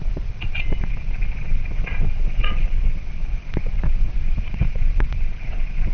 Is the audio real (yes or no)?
no